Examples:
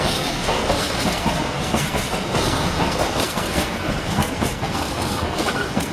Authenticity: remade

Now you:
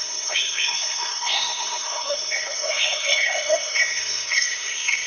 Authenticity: remade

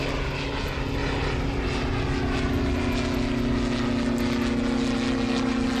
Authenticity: recorded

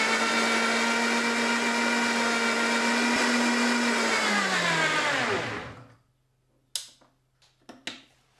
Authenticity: recorded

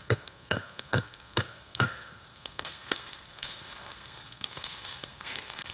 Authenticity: remade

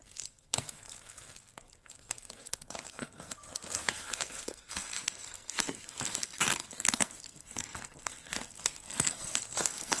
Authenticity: remade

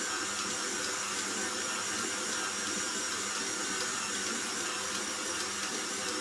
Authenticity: recorded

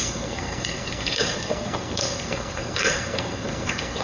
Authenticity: remade